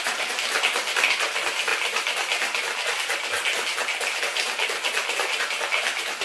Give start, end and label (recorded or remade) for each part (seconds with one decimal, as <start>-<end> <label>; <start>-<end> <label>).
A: 0.0-6.2 recorded